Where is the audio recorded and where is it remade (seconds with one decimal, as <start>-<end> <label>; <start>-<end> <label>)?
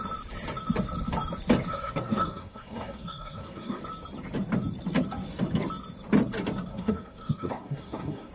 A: 0.0-1.7 recorded; 1.7-3.8 remade; 3.8-6.7 recorded; 6.7-8.3 remade